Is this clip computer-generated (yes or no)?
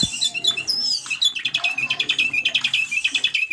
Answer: yes